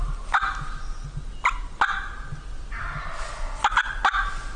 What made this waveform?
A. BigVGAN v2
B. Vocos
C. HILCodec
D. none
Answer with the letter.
D